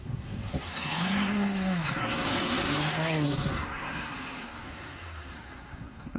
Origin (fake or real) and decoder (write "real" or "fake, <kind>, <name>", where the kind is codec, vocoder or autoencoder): fake, codec, SNAC